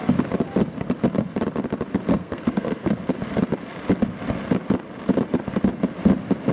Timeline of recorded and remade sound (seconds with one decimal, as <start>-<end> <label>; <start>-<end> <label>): 0.0-2.1 recorded; 2.1-2.9 remade; 2.9-6.5 recorded